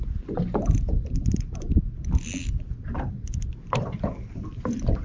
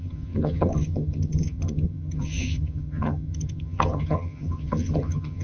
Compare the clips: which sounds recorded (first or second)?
first